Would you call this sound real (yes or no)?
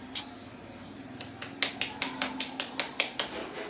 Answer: yes